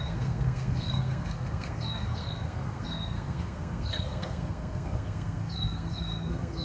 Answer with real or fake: fake